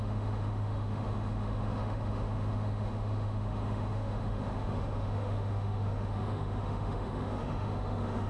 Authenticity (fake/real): fake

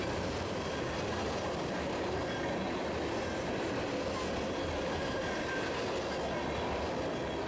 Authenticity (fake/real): real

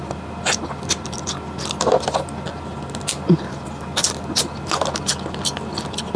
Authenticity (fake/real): real